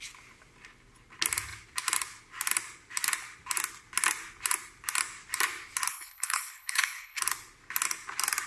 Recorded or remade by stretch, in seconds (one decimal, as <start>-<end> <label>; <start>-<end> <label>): 0.0-5.9 recorded; 5.9-7.2 remade; 7.2-8.5 recorded